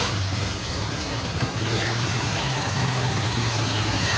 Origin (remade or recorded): remade